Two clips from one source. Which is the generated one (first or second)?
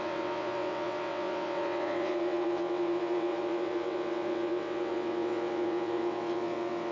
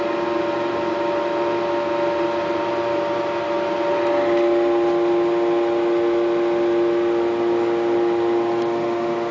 first